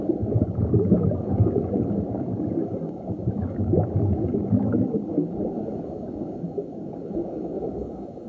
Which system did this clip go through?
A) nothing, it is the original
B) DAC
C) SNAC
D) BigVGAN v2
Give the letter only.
B